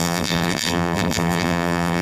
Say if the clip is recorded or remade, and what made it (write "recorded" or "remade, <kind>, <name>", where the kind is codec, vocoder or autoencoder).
remade, vocoder, BigVGAN v2